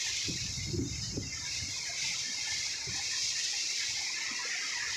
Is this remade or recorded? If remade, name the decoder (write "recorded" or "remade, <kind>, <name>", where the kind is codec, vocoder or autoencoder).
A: remade, vocoder, BigVGAN v2